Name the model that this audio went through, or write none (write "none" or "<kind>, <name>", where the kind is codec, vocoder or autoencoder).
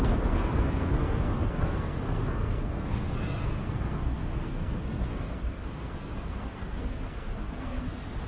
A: codec, SNAC